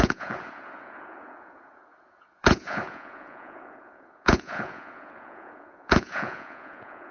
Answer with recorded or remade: remade